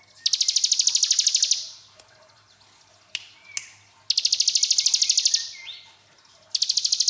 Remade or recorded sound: recorded